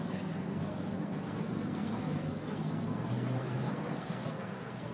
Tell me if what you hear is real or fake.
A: fake